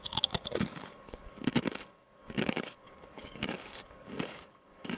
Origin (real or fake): fake